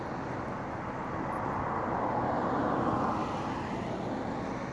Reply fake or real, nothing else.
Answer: real